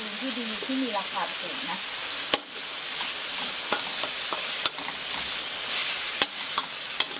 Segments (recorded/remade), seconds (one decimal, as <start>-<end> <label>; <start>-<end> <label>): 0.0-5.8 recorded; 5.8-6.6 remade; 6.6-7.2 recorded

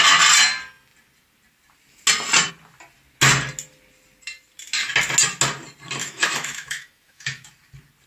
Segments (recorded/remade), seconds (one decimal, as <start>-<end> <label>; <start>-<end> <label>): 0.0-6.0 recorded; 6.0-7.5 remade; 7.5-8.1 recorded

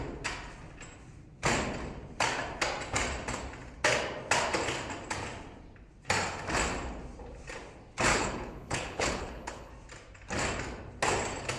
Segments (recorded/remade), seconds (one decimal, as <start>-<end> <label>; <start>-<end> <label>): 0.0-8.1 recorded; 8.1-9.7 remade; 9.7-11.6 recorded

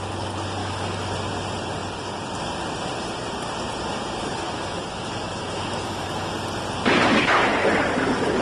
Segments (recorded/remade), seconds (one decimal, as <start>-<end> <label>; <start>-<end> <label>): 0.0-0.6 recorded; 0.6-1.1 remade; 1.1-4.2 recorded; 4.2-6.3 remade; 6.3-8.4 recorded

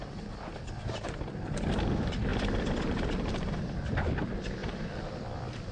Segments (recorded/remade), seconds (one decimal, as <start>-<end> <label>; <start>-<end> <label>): 0.0-2.3 recorded; 2.3-4.1 remade; 4.1-4.6 recorded; 4.6-5.7 remade

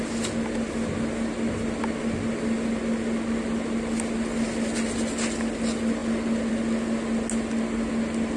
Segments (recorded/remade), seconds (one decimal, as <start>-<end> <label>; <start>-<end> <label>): 0.0-8.4 recorded

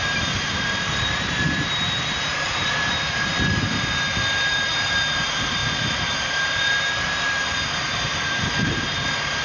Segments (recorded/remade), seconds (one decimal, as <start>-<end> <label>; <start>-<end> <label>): 0.0-9.4 remade

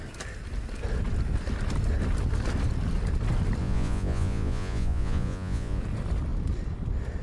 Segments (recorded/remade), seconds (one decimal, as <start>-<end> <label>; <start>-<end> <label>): 0.0-3.6 recorded; 3.6-5.8 remade; 5.8-7.2 recorded